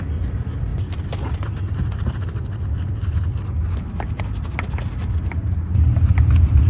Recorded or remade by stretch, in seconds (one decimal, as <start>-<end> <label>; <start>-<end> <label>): 0.0-0.7 recorded; 0.7-4.2 remade; 4.2-6.7 recorded